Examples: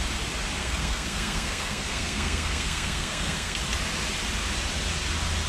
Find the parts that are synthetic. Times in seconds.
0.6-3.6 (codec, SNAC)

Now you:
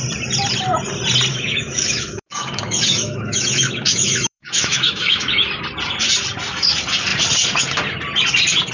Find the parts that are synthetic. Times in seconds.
1.3-5.5 (autoencoder, DAC-VAE)

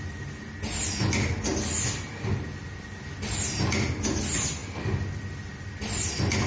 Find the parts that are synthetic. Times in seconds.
none

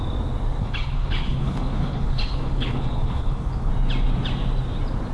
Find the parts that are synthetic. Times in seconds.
0.6-3.7 (codec, HILCodec)

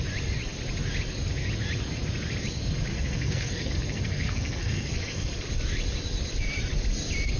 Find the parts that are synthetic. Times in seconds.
2.9-5.3 (codec, SNAC)